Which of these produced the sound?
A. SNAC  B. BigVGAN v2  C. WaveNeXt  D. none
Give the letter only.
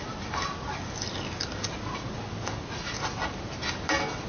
D